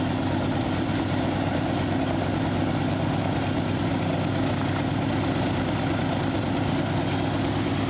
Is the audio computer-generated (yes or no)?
no